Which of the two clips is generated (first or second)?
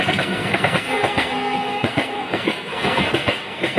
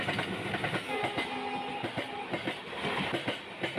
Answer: first